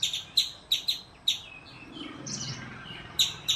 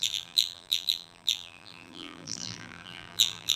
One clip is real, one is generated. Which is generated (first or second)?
second